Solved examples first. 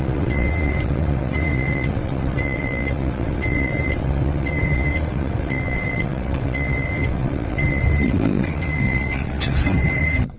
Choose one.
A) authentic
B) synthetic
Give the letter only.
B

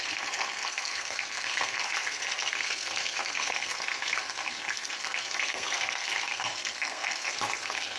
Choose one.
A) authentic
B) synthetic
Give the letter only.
B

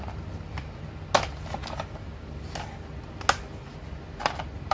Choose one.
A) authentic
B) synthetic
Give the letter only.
A